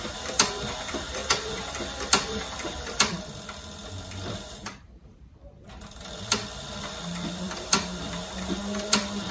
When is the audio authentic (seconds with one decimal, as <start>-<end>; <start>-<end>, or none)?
1.2-2.9; 5.4-6.2